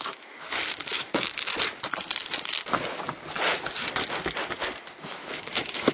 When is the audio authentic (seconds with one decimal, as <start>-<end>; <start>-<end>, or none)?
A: 1.5-5.0